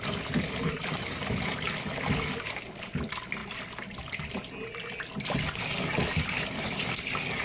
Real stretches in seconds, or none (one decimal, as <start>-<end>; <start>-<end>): 0.0-7.4